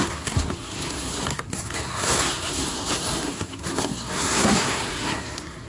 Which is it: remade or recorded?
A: remade